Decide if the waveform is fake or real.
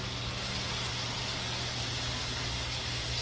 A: real